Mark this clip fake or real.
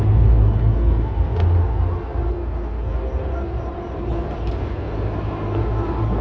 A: real